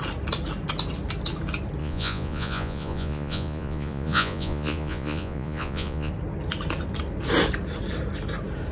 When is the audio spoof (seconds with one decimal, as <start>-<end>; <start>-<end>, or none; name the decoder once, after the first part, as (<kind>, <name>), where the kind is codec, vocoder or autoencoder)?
1.8-6.1 (vocoder, Vocos)